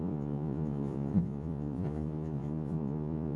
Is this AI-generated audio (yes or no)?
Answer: yes